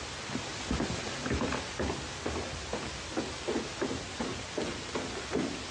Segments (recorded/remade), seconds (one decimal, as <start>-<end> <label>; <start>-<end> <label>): 0.0-5.7 recorded